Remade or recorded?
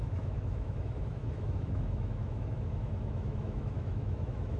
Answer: remade